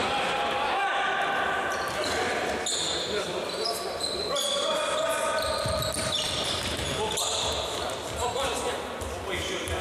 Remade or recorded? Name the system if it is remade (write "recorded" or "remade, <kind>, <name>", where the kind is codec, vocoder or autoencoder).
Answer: recorded